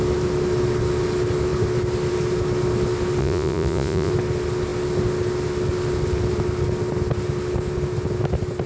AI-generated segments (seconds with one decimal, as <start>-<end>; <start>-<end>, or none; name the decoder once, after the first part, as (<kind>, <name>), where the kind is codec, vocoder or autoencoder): 3.2-4.1 (vocoder, Vocos)